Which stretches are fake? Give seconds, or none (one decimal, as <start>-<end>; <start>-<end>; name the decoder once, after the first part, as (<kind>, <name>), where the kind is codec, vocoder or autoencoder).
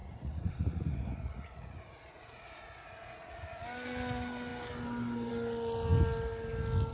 0.0-3.6 (vocoder, Vocos)